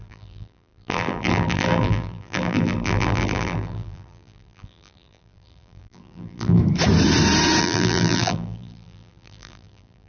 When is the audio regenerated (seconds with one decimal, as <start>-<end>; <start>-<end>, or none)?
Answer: 0.0-6.6; 7.6-10.1